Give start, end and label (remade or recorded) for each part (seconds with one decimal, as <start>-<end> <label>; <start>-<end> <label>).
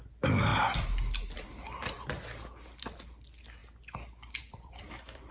0.0-0.5 remade; 0.5-1.5 recorded; 1.5-5.3 remade